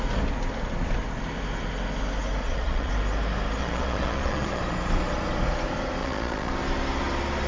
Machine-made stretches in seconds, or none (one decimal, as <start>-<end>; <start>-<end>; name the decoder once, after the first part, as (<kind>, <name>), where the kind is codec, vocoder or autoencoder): 2.4-2.9 (vocoder, Vocos); 3.6-4.6; 6.0-6.5